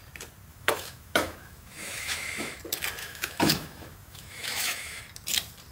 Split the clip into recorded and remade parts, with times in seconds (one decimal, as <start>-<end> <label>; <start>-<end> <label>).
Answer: 0.0-0.5 recorded; 0.5-2.6 remade; 2.6-3.0 recorded; 3.0-5.0 remade; 5.0-5.7 recorded